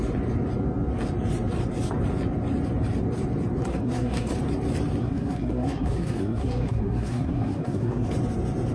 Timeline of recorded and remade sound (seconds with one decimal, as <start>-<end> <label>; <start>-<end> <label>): 0.0-3.6 recorded; 3.6-4.3 remade; 4.3-5.0 recorded; 5.0-8.1 remade; 8.1-8.7 recorded